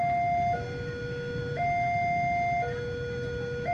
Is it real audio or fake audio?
real